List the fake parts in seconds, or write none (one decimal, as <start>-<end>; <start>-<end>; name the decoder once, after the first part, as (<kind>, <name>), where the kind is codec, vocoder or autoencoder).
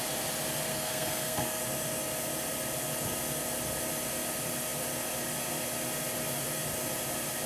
0.7-1.6 (codec, SNAC)